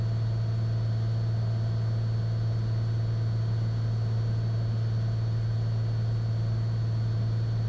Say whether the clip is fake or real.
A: real